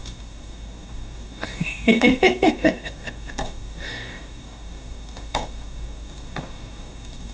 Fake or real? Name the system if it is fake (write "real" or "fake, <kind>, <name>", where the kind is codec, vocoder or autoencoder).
fake, codec, DAC